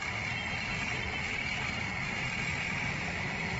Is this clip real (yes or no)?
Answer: yes